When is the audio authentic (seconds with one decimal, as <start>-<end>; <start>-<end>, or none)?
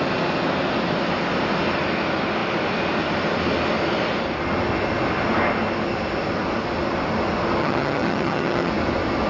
0.0-7.6; 8.7-9.3